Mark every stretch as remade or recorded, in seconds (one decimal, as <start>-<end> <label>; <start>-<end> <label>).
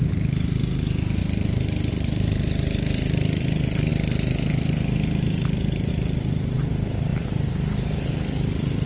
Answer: 0.0-1.2 remade; 1.2-1.9 recorded; 1.9-3.9 remade; 3.9-5.9 recorded; 5.9-8.9 remade